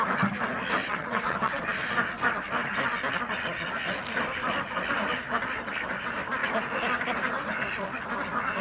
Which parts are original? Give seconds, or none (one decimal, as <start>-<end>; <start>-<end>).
0.0-0.8; 1.6-8.6